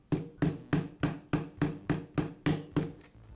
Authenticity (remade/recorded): recorded